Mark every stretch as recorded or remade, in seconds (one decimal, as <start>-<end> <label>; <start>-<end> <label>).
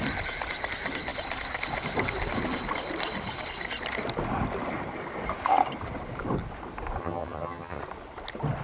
0.0-7.0 recorded; 7.0-7.8 remade; 7.8-8.6 recorded